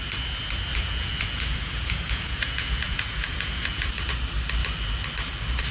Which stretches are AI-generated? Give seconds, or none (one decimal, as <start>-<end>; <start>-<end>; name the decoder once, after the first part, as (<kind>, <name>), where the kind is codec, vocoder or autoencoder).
0.7-4.1 (vocoder, Vocos)

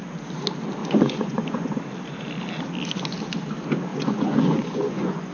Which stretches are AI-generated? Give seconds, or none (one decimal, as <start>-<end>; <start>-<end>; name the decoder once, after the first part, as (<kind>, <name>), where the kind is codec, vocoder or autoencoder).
0.8-1.8 (vocoder, Vocos); 3.9-5.3

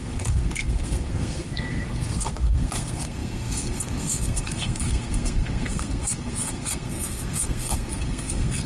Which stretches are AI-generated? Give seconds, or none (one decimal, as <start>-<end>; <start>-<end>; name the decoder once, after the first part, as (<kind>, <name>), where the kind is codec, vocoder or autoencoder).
0.0-8.7 (codec, SNAC)